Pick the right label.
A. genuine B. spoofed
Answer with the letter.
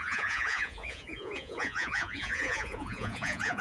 B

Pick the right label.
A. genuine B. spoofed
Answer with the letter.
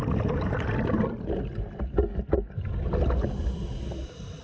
A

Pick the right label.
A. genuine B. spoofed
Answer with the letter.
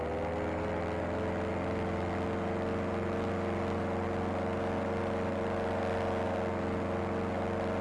A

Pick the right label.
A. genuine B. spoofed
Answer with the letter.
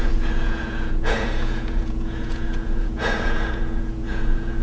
B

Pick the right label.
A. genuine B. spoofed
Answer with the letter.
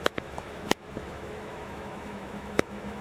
B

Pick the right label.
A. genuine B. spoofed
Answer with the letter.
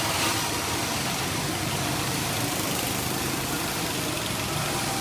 A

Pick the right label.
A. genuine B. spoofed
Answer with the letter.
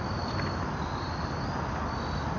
A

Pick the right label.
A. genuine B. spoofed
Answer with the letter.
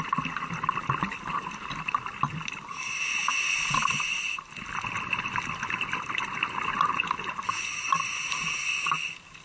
A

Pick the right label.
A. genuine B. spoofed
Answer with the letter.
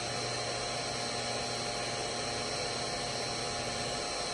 A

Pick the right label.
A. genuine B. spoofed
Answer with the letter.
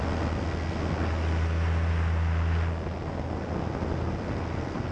A